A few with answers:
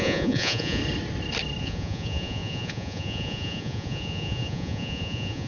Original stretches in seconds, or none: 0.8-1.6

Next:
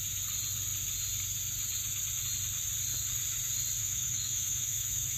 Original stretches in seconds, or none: 0.0-3.8

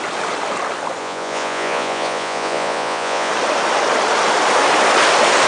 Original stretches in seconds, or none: 0.0-1.0; 3.3-5.5

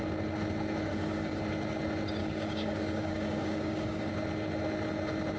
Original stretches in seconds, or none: 0.0-0.9; 1.4-2.2; 4.1-5.4

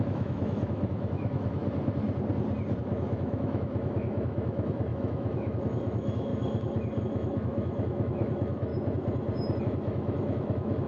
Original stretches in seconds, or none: 1.6-2.8; 6.3-7.0; 8.7-9.6

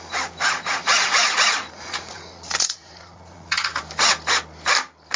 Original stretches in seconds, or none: 0.0-0.7; 3.8-5.2